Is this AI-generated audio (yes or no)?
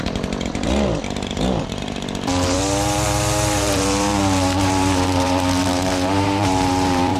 yes